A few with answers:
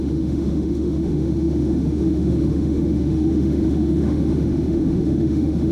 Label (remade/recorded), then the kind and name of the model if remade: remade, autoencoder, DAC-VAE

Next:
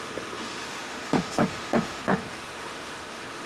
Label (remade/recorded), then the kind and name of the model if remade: remade, autoencoder, DAC-VAE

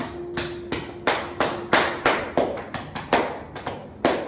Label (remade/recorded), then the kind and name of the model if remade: recorded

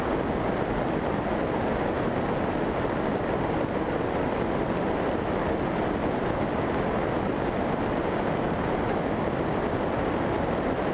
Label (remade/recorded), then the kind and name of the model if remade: recorded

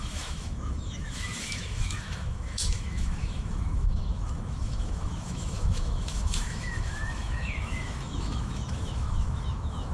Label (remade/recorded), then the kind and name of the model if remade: remade, autoencoder, DAC-VAE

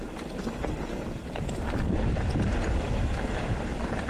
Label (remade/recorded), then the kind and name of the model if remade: recorded